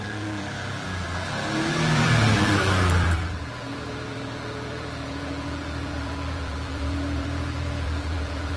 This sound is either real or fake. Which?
fake